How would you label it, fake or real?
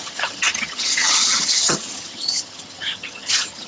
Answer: fake